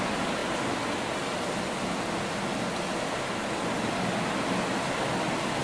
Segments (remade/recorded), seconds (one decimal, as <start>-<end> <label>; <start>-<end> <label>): 0.0-5.6 recorded